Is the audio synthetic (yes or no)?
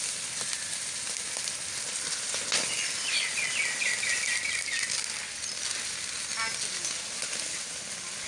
no